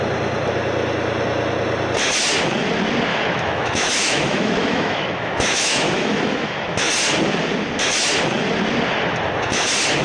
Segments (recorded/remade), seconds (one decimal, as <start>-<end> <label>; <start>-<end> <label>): 0.0-3.1 recorded; 3.1-6.9 remade; 6.9-10.0 recorded